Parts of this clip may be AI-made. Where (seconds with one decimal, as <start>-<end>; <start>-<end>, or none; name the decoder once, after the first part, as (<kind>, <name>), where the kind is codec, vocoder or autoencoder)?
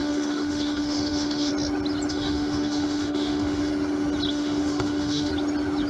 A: 0.0-1.5 (autoencoder, DAC-VAE); 2.1-3.7; 4.3-5.3